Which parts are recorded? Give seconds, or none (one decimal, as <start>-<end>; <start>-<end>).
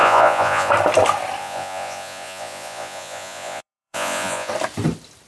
0.7-1.4; 4.5-5.3